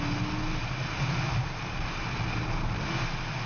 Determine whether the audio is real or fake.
real